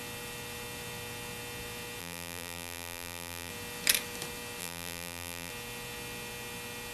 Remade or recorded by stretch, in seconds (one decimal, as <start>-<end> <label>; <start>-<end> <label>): 0.0-2.0 recorded; 2.0-3.5 remade; 3.5-4.6 recorded; 4.6-5.5 remade; 5.5-6.9 recorded